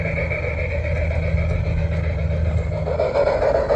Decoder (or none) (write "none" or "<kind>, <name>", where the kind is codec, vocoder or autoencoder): none